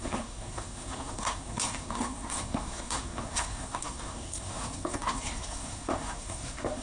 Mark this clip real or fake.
fake